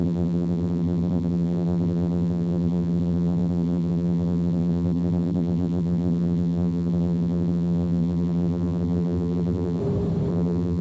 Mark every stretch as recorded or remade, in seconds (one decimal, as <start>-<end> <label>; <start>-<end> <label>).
0.0-9.8 remade; 9.8-10.3 recorded; 10.3-10.8 remade